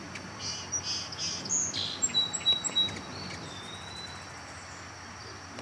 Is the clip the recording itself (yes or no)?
yes